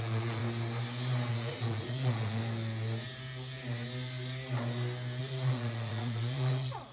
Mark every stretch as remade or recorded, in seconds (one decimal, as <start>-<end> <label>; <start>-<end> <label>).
0.0-0.4 remade; 0.4-1.3 recorded; 1.3-2.4 remade; 2.4-5.2 recorded; 5.2-6.9 remade